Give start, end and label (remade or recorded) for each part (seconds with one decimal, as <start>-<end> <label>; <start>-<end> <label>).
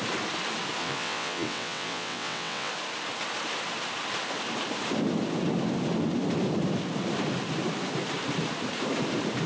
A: 0.0-0.8 recorded; 0.8-2.7 remade; 2.7-9.5 recorded